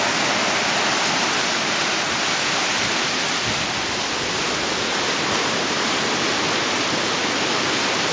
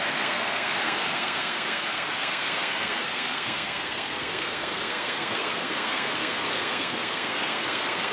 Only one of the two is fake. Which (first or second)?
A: second